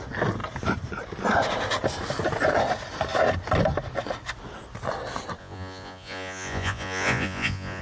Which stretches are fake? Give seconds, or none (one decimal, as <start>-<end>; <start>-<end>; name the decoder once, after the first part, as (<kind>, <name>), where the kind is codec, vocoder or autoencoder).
5.4-7.8 (vocoder, Vocos)